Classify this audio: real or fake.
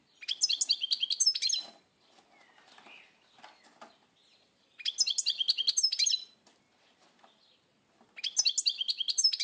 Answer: real